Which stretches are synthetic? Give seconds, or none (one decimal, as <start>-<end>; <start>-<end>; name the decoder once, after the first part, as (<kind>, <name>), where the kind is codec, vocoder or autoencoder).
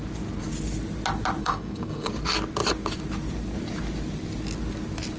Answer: 1.4-2.1 (codec, DAC)